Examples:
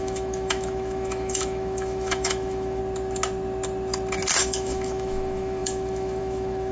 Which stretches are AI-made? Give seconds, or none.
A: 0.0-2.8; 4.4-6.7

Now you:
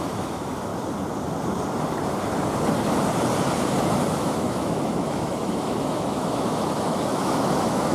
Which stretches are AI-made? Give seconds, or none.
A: 0.0-0.7; 4.2-7.9

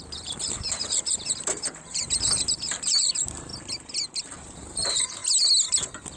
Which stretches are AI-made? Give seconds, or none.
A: 0.0-3.5; 4.2-5.2

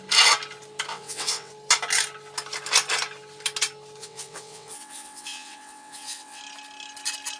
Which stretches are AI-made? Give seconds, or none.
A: 0.9-1.5; 4.0-6.4

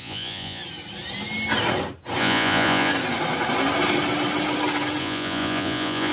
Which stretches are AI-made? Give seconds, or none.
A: 0.0-0.6; 2.2-2.9; 5.0-6.1

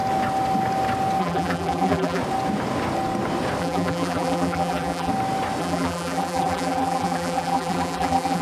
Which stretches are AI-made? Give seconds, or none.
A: 1.2-2.2; 3.6-5.1; 5.6-8.4